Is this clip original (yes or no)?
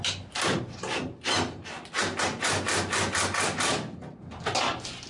yes